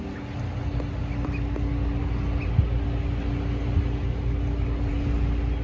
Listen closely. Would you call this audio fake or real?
real